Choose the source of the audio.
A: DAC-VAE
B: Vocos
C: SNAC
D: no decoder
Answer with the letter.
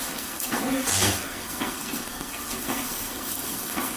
C